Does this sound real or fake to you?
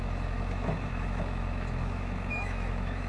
fake